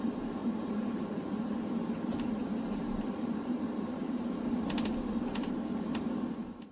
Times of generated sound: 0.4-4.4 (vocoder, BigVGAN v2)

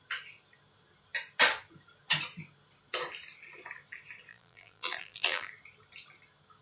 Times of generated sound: 4.3-5.5 (vocoder, BigVGAN v2)